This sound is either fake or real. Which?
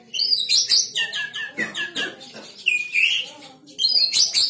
real